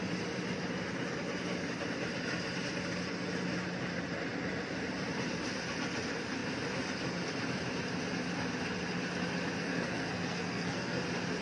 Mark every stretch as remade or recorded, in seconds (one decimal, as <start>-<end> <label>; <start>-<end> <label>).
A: 0.0-9.6 recorded; 9.6-11.0 remade; 11.0-11.4 recorded